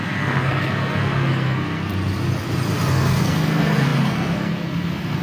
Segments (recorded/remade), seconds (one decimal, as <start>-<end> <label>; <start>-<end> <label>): 0.0-1.9 remade; 1.9-2.9 recorded; 2.9-5.2 remade